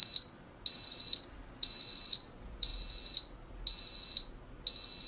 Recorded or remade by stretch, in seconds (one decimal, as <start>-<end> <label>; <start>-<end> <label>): 0.0-0.7 recorded; 0.7-2.7 remade; 2.7-5.1 recorded